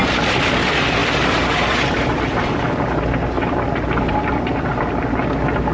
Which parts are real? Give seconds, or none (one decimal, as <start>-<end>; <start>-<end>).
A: 0.0-5.7